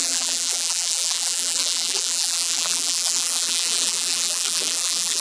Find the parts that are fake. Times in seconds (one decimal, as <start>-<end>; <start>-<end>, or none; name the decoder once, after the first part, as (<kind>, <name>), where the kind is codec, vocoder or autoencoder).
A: 0.0-5.2 (vocoder, BigVGAN v2)